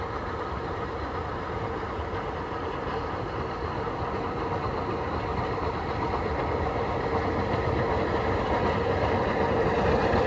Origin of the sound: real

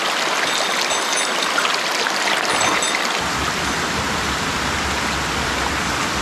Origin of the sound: real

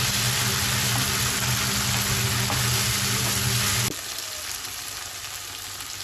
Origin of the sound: real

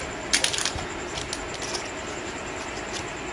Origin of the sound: real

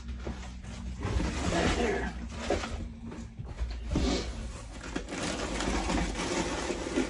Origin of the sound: real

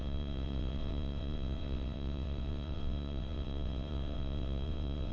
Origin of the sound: fake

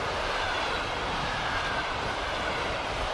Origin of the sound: fake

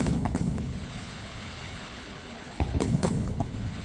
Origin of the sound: fake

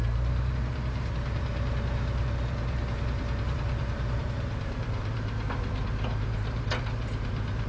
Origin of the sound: fake